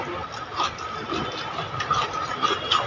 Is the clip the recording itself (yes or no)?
yes